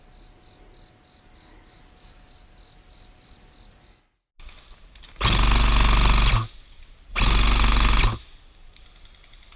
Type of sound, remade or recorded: recorded